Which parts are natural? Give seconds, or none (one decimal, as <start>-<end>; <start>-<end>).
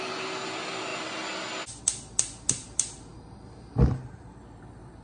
0.0-3.1; 4.4-5.0